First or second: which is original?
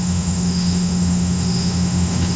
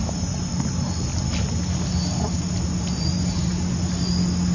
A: second